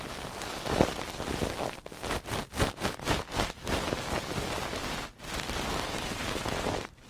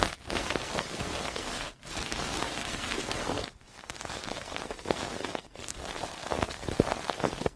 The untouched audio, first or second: first